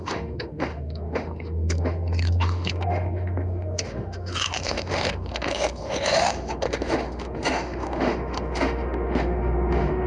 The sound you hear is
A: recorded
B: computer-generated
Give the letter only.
B